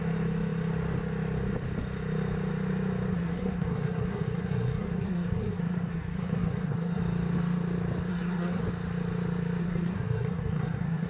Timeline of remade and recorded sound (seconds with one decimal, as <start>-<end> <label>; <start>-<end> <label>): 0.0-3.1 recorded; 3.1-7.0 remade; 7.0-8.1 recorded; 8.1-8.6 remade; 8.6-9.6 recorded; 9.6-11.1 remade